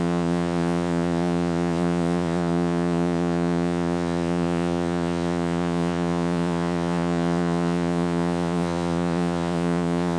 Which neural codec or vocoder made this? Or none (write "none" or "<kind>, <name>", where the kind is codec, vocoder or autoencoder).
vocoder, Vocos